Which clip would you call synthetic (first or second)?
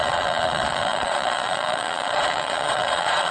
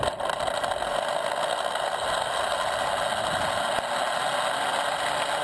first